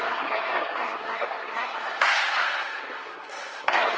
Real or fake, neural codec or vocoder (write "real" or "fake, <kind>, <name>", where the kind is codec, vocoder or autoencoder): fake, codec, SNAC